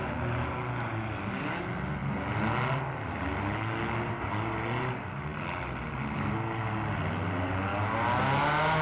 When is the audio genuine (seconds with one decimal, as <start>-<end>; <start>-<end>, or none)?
0.0-8.8